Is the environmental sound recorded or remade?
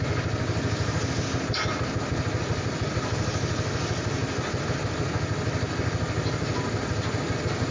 recorded